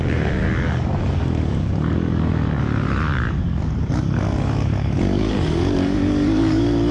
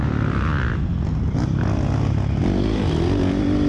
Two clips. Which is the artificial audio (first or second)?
first